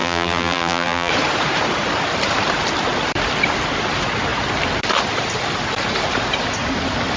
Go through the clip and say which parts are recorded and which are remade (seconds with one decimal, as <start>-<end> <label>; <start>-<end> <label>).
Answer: 0.0-1.1 remade; 1.1-7.2 recorded